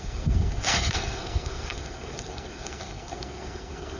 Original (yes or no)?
no